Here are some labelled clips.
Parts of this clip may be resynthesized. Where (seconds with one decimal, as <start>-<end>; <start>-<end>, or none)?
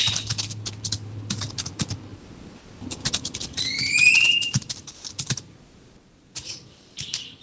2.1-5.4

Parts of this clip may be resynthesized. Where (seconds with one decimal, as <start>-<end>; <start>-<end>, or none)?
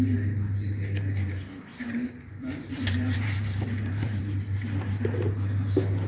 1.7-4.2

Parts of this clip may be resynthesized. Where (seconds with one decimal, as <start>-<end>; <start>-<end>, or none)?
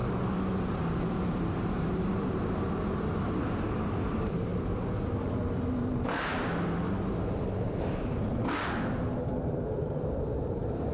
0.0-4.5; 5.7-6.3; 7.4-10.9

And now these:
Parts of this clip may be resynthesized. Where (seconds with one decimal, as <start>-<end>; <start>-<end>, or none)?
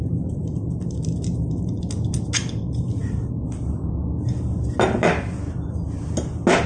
none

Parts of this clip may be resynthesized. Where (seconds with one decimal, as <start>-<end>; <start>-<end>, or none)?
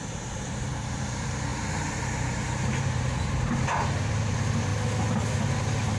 0.0-4.7; 5.2-6.0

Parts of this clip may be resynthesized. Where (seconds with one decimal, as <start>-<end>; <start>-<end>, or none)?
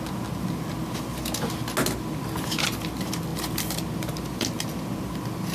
none